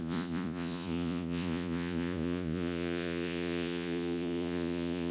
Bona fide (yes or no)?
no